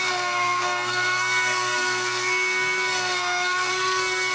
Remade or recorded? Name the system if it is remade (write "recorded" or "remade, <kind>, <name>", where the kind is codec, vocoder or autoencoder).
remade, codec, SNAC